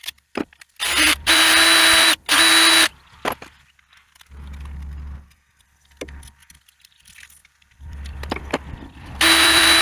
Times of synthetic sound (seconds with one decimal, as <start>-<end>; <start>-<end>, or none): 0.8-1.4; 6.4-9.8